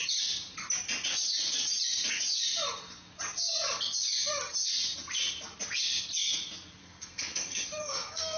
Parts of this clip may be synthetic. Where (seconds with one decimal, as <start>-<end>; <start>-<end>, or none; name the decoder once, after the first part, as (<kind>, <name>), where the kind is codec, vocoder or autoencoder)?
6.8-8.4 (codec, SNAC)